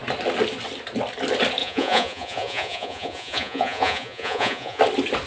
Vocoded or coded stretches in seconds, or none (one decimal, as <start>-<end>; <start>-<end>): 1.6-4.8